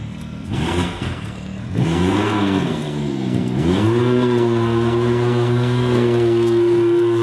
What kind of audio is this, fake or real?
fake